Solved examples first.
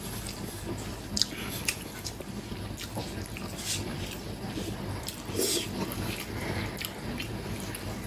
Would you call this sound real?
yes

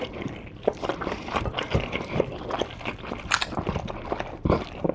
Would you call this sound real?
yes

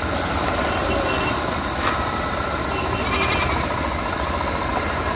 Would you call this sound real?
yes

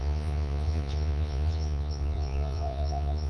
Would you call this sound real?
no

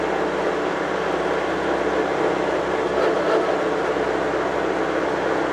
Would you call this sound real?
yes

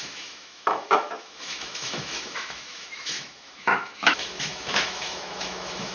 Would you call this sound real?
no